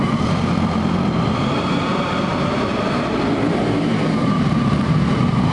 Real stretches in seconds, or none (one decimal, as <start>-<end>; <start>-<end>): none